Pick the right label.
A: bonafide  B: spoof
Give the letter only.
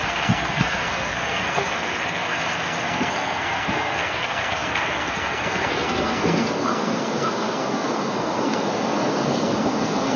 B